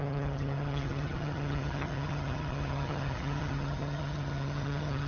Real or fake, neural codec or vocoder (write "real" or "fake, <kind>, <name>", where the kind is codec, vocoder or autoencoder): fake, vocoder, HiFi-GAN